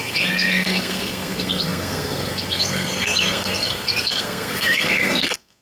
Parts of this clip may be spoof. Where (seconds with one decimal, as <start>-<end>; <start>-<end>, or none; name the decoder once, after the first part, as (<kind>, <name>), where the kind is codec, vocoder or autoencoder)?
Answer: 0.0-5.6 (codec, SNAC)